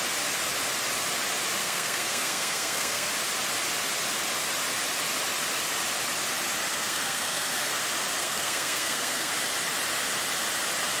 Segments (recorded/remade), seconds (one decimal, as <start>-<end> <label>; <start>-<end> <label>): 0.0-1.6 recorded; 1.6-3.1 remade; 3.1-6.7 recorded; 6.7-7.8 remade; 7.8-8.2 recorded; 8.2-9.3 remade; 9.3-11.0 recorded

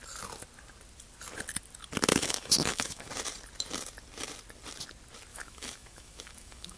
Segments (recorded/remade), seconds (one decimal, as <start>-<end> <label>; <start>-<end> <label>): 0.0-2.1 recorded; 2.1-3.1 remade; 3.1-5.3 recorded; 5.3-6.8 remade

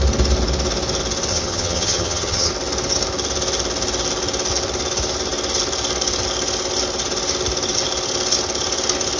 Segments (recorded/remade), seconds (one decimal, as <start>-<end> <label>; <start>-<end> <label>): 0.0-1.3 recorded; 1.3-2.5 remade; 2.5-9.2 recorded

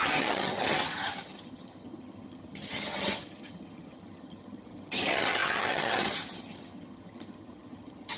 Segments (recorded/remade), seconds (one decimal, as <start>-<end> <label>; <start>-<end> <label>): 0.0-8.2 remade

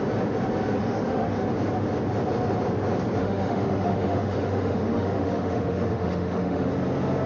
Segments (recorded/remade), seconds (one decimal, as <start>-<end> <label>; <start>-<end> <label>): 0.0-0.8 recorded; 0.8-1.4 remade; 1.4-3.2 recorded; 3.2-6.7 remade; 6.7-7.3 recorded

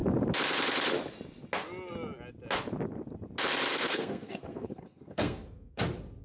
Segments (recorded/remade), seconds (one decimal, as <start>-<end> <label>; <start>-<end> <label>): 0.0-3.7 recorded; 3.7-5.8 remade; 5.8-6.2 recorded

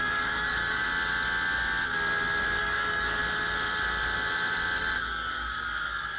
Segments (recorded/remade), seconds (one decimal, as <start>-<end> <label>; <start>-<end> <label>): 0.0-0.8 remade; 0.8-2.6 recorded; 2.6-3.2 remade; 3.2-4.8 recorded; 4.8-6.2 remade

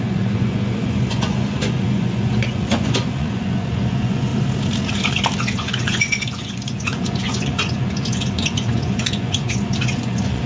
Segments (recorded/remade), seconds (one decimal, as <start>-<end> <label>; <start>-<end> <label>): 0.0-4.3 remade; 4.3-5.4 recorded; 5.4-10.5 remade